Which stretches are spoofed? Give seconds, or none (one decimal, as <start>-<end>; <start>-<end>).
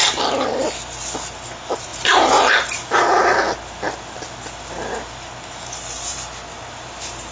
none